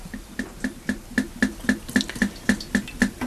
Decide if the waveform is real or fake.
real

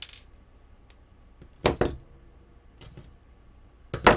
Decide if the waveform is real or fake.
real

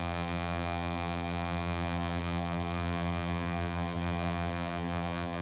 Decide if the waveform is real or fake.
fake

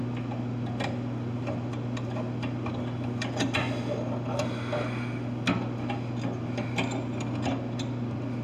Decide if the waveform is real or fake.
real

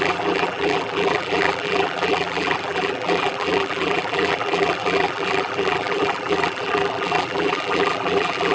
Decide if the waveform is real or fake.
fake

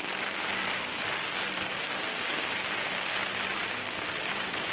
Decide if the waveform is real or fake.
fake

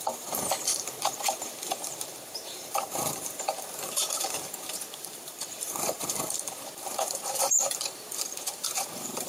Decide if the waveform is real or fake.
fake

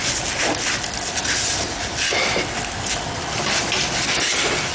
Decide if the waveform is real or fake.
real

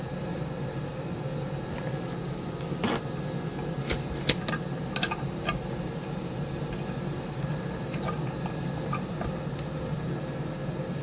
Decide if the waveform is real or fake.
real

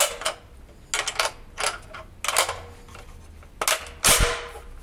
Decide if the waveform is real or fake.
real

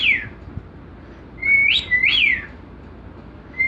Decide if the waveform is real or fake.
real